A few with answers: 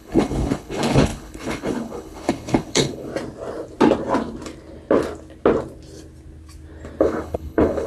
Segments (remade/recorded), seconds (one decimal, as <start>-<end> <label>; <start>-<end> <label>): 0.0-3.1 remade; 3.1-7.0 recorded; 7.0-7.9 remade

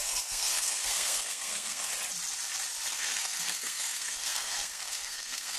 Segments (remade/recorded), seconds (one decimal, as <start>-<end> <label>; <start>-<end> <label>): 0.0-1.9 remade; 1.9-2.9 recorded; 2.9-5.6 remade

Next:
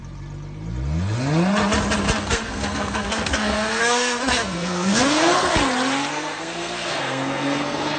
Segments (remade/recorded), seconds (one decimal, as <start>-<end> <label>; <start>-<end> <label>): 0.0-2.2 recorded; 2.2-5.5 remade; 5.5-6.1 recorded; 6.1-8.0 remade

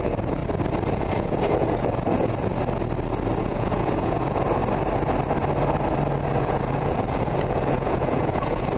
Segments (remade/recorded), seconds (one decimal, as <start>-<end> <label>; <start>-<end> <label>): 0.0-0.4 remade; 0.4-0.9 recorded; 0.9-2.5 remade; 2.5-3.4 recorded; 3.4-4.6 remade; 4.6-6.4 recorded; 6.4-8.8 remade

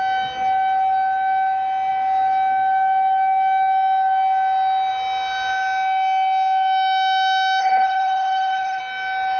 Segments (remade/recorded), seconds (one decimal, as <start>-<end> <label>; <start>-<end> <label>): 0.0-7.6 recorded; 7.6-8.8 remade; 8.8-9.4 recorded

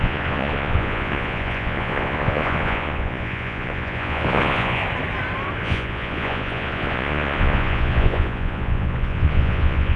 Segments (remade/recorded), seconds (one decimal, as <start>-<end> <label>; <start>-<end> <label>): 0.0-4.8 remade; 4.8-5.6 recorded; 5.6-10.0 remade

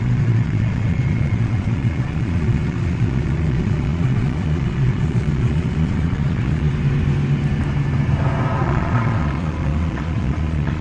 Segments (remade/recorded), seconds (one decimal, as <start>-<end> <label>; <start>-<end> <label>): 0.0-6.7 remade; 6.7-8.6 recorded; 8.6-10.8 remade

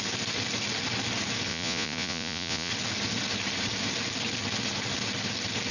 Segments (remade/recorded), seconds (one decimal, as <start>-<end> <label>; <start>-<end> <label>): 0.0-1.5 recorded; 1.5-2.7 remade; 2.7-5.7 recorded